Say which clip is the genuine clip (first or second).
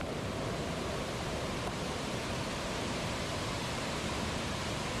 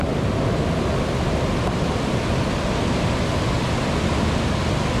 second